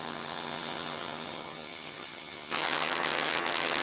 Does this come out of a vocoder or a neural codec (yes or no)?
yes